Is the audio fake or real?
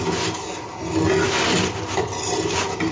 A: real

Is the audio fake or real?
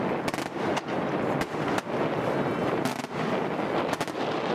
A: real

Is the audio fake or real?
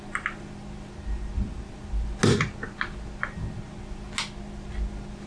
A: real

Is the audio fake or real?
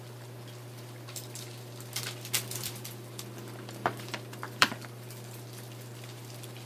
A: fake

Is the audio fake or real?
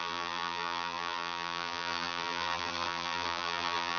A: fake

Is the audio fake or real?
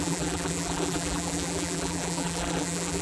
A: fake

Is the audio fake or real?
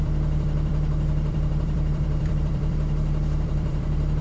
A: fake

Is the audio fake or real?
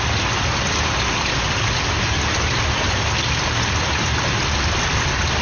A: fake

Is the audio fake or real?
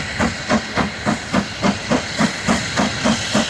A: real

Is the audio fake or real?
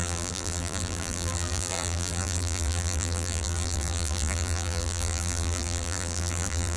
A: fake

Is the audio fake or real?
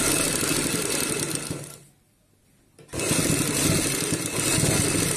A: real